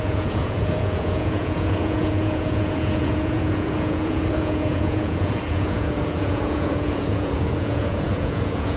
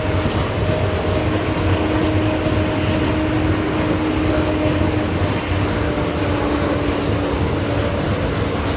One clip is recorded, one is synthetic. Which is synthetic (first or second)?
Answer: first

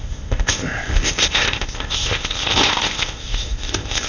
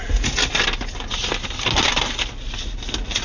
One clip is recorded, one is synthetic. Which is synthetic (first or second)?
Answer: first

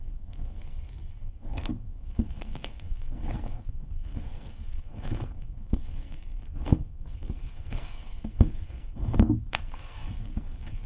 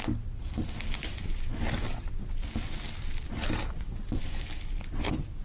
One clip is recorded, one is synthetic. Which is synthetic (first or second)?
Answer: first